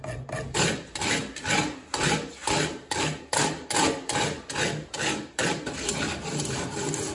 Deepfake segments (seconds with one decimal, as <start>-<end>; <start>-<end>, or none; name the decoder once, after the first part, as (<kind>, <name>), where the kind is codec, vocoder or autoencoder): none